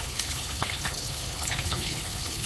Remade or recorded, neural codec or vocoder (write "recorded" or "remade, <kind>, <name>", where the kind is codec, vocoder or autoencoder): remade, codec, HILCodec